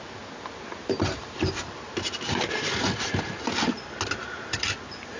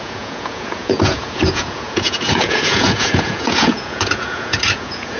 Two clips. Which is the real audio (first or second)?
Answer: first